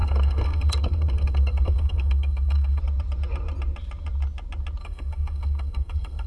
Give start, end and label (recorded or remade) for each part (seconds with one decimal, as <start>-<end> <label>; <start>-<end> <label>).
0.0-2.8 remade; 2.8-4.8 recorded; 4.8-6.3 remade